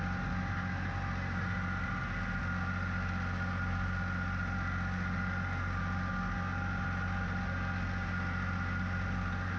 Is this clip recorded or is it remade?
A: recorded